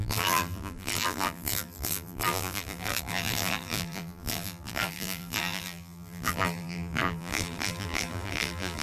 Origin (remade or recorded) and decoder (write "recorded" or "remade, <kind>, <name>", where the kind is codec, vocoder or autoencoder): remade, vocoder, BigVGAN v2